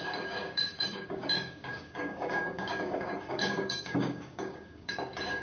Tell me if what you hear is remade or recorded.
remade